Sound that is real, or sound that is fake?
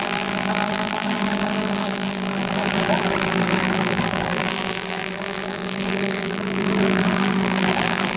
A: fake